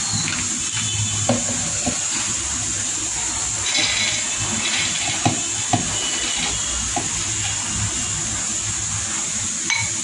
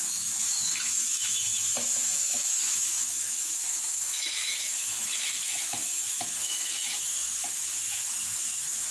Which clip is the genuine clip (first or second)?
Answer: first